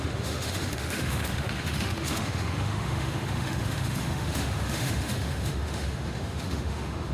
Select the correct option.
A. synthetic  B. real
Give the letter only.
A